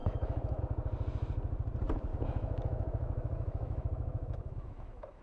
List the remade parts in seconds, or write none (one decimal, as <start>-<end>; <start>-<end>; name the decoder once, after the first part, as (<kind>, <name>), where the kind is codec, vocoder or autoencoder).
0.0-0.6 (autoencoder, DAC-VAE); 2.1-5.2